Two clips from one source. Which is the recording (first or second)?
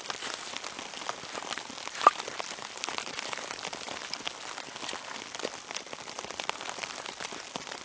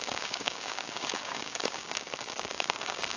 first